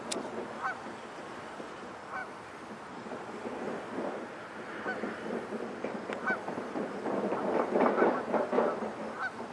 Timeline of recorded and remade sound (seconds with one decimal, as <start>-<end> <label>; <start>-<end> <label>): 0.0-9.5 recorded